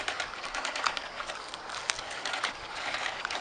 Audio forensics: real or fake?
fake